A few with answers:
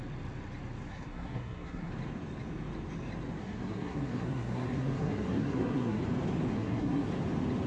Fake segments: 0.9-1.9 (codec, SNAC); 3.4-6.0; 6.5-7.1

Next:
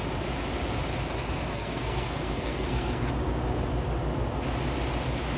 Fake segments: 1.5-3.1 (codec, SNAC)

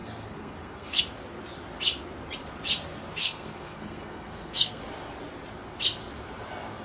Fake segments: 0.0-1.0 (codec, SNAC); 3.2-4.8